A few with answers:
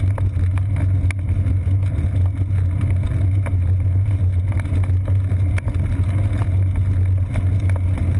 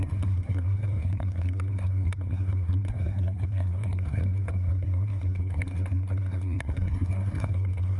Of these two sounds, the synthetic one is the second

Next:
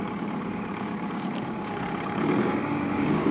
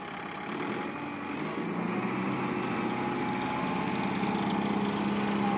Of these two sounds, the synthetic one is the first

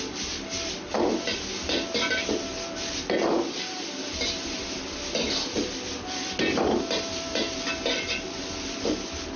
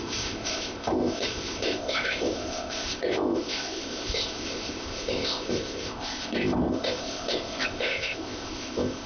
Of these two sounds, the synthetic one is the second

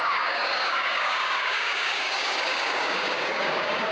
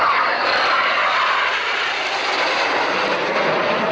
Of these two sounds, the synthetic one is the first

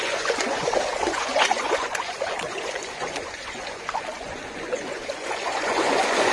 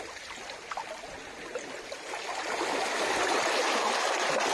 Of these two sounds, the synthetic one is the first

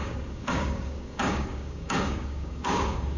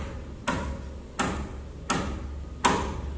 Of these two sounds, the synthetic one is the first